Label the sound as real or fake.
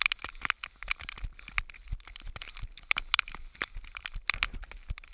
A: real